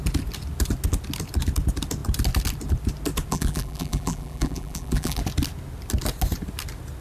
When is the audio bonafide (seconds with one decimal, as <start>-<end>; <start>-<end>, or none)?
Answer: 0.0-3.3; 5.2-7.0